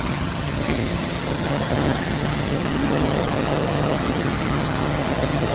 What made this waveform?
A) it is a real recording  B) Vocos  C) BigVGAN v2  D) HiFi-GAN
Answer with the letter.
D